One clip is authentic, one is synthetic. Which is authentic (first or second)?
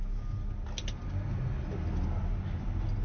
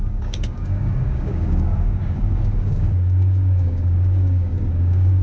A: first